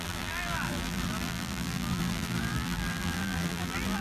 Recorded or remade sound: remade